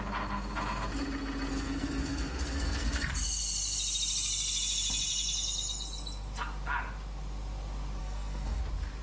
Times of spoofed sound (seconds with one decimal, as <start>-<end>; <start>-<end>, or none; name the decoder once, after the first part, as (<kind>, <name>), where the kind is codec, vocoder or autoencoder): 1.5-3.1 (codec, SNAC); 8.0-8.6